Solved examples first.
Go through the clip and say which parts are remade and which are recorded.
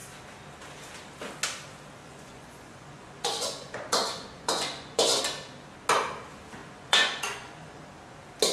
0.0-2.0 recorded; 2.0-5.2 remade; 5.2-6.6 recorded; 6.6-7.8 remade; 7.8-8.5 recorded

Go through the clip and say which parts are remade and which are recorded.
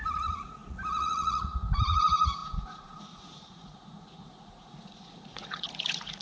0.0-6.2 remade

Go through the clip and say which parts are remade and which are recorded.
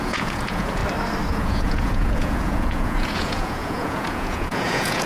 0.0-0.8 remade; 0.8-1.3 recorded; 1.3-5.1 remade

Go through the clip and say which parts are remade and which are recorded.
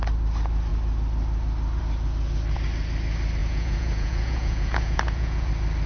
0.0-3.4 recorded; 3.4-5.5 remade; 5.5-5.9 recorded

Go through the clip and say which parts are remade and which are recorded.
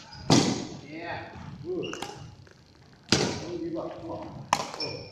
0.0-5.1 recorded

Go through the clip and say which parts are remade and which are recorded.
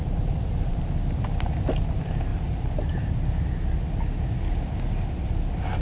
0.0-5.8 recorded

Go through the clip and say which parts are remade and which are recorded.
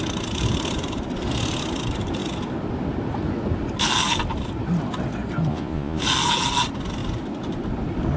0.0-5.5 recorded; 5.5-6.0 remade; 6.0-8.2 recorded